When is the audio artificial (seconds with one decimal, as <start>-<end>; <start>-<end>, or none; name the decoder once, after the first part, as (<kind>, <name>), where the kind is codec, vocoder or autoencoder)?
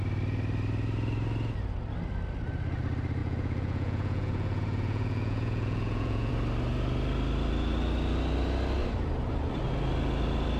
3.2-6.3 (vocoder, Vocos)